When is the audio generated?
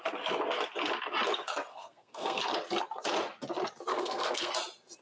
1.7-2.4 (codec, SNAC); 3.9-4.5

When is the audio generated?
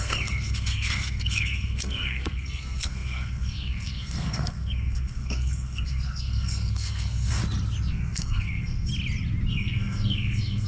0.0-7.4 (codec, SNAC); 7.9-8.9; 9.5-10.7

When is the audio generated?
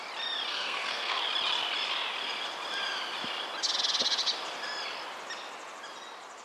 0.5-1.2 (codec, SNAC)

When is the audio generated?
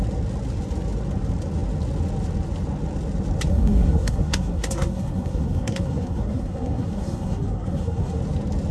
3.5-8.2 (codec, SNAC)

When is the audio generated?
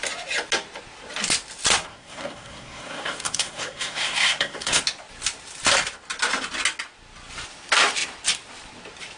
1.9-4.8 (codec, SNAC)